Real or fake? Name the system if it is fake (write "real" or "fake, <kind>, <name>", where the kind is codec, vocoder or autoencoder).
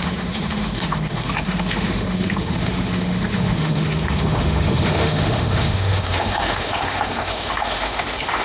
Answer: fake, autoencoder, DAC-VAE